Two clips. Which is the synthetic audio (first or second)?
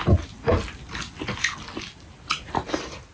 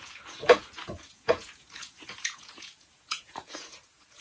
second